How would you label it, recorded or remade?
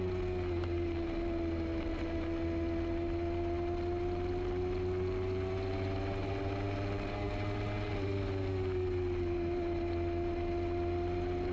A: recorded